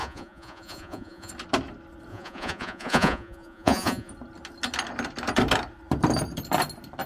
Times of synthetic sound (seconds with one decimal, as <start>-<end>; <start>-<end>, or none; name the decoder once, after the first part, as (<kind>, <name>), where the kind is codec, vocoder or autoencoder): 0.0-1.3 (vocoder, Vocos); 2.1-4.1